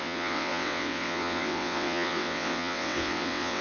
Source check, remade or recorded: remade